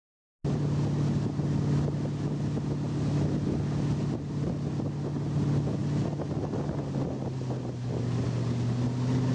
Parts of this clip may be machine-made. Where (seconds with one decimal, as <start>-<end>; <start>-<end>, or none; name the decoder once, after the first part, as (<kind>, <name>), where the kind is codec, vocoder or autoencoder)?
none